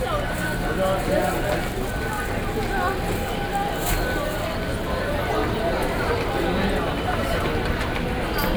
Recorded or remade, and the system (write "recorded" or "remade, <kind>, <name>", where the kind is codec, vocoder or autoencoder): recorded